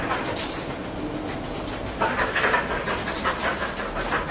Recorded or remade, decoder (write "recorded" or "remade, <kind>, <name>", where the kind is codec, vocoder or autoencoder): recorded